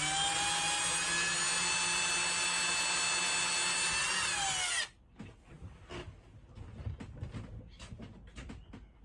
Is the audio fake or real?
real